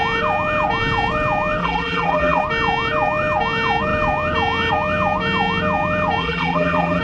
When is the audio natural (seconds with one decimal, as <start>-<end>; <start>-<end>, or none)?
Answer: 0.0-1.6; 2.4-6.2